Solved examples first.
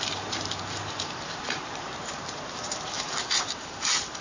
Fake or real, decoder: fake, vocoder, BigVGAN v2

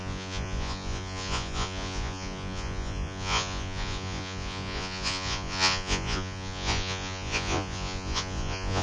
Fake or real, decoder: fake, vocoder, Vocos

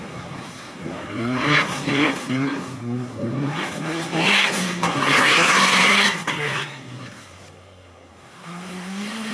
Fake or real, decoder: fake, codec, SNAC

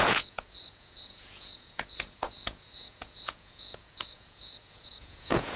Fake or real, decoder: fake, vocoder, Vocos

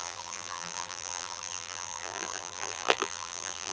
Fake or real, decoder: fake, vocoder, BigVGAN v2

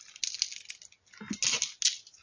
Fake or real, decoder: real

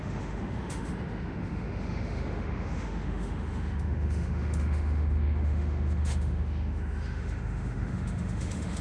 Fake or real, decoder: fake, autoencoder, DAC-VAE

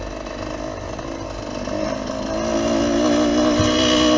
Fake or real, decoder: real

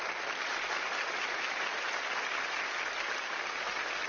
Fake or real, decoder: real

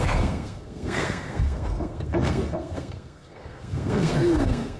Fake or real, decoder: fake, codec, SNAC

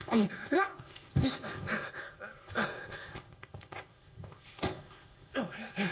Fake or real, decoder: fake, codec, ZipCodec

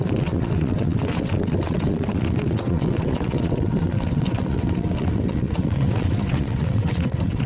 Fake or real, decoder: fake, vocoder, WaveNeXt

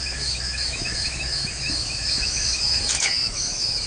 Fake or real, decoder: fake, autoencoder, DAC-VAE